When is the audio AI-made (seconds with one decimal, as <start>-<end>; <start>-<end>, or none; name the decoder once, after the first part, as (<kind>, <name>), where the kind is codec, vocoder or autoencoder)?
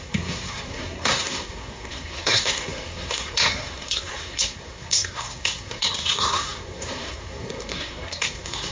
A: 0.0-8.7 (codec, SNAC)